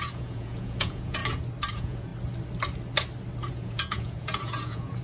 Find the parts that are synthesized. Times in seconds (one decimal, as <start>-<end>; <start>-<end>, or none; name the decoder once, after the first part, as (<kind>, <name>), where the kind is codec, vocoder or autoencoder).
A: 0.0-1.2 (vocoder, Vocos); 1.7-2.1; 3.5-5.0